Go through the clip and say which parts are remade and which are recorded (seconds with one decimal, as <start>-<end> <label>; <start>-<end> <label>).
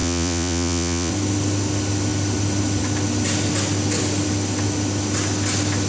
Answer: 0.0-1.1 remade; 1.1-5.9 recorded